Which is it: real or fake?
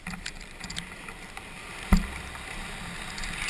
fake